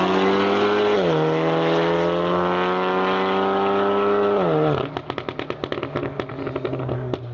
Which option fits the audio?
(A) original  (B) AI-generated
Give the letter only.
A